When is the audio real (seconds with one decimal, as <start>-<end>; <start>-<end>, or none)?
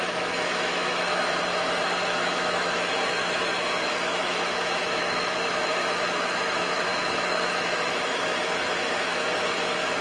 none